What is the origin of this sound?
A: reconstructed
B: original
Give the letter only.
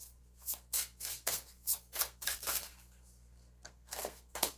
A